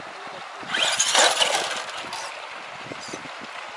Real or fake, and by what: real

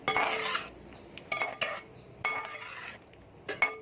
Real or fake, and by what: real